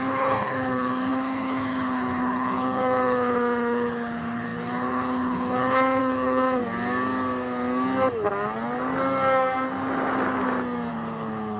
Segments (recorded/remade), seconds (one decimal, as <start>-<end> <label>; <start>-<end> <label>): 0.0-6.6 remade; 6.6-10.9 recorded; 10.9-11.6 remade